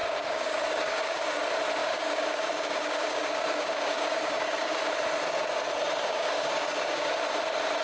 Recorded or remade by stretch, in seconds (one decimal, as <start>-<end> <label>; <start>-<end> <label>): 0.0-1.4 remade; 1.4-1.8 recorded; 1.8-4.8 remade; 4.8-6.0 recorded; 6.0-7.2 remade; 7.2-7.8 recorded

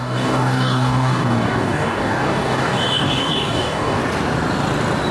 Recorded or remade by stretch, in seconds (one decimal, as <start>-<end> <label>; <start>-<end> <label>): 0.0-4.0 remade; 4.0-5.1 recorded

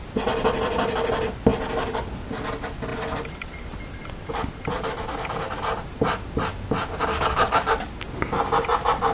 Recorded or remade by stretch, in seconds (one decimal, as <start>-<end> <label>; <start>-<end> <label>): 0.0-7.1 recorded; 7.1-7.9 remade; 7.9-9.1 recorded

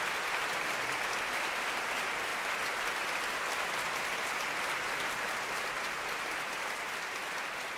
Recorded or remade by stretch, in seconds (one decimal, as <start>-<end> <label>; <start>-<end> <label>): 0.0-7.8 recorded

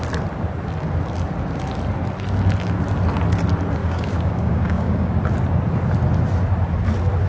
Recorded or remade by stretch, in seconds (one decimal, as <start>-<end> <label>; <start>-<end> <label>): 0.0-3.8 recorded; 3.8-5.1 remade; 5.1-7.3 recorded

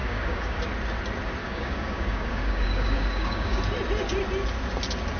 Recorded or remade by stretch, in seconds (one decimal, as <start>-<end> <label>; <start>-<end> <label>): 0.0-0.6 remade; 0.6-1.4 recorded; 1.4-3.6 remade; 3.6-5.2 recorded

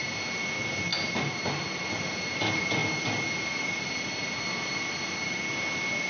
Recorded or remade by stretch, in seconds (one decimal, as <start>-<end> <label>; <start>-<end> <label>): 0.0-6.1 recorded

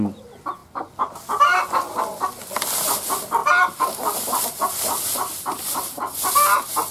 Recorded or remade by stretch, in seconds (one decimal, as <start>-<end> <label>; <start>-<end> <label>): 0.0-6.9 recorded